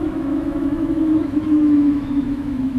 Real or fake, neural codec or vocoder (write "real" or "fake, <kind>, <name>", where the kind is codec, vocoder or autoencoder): fake, autoencoder, DAC-VAE